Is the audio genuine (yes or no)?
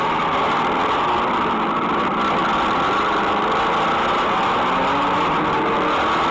yes